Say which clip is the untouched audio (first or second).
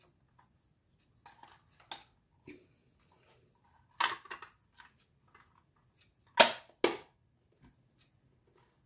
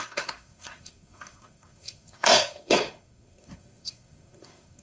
first